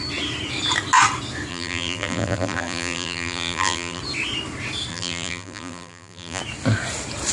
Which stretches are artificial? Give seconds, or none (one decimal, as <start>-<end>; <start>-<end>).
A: 1.5-4.0; 4.9-6.4